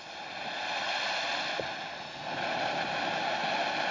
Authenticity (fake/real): real